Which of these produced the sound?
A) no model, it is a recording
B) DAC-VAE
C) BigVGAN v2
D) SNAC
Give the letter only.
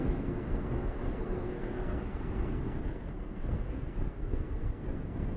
D